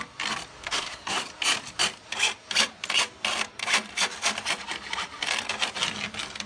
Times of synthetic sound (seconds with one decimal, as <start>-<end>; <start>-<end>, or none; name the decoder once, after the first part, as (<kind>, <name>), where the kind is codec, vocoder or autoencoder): 0.6-1.3 (codec, SNAC)